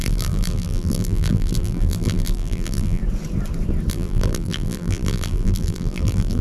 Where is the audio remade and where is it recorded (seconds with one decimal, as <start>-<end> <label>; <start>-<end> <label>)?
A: 0.0-3.0 remade; 3.0-3.9 recorded; 3.9-6.4 remade